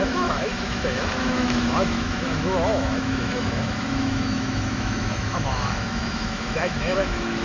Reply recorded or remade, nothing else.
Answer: remade